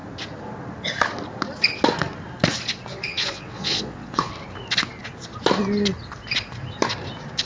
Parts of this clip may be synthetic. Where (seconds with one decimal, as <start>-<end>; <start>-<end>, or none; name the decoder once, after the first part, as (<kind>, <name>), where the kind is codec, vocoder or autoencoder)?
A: 2.9-4.3 (vocoder, Vocos)